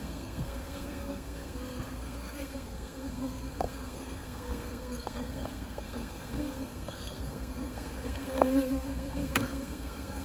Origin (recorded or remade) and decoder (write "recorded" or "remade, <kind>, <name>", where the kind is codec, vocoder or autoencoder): remade, codec, SNAC